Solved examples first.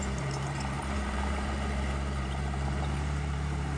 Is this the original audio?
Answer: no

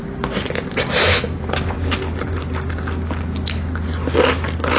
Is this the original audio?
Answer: yes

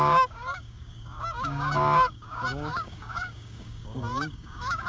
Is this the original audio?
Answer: no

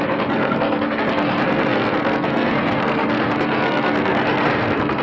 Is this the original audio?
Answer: no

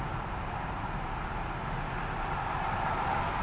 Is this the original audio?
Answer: yes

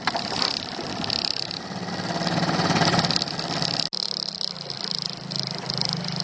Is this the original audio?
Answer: yes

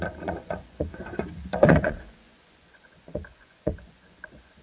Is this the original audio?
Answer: no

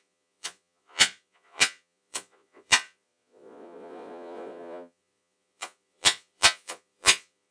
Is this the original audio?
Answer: no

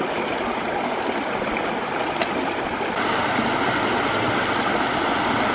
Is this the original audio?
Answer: yes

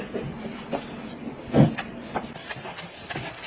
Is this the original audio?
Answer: yes